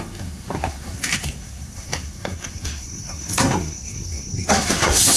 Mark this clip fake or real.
fake